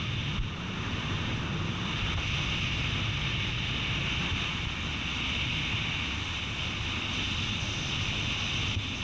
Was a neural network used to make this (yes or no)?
no